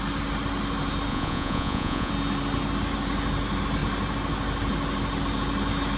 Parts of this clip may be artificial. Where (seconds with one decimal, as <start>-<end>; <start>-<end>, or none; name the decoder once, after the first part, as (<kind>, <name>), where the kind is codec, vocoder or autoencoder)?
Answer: 1.1-2.1 (vocoder, Vocos)